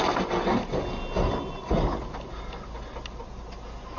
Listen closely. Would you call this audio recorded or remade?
recorded